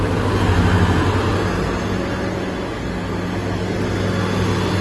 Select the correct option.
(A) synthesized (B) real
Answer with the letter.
B